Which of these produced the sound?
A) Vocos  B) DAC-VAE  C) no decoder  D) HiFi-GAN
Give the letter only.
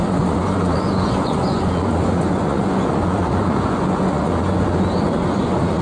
A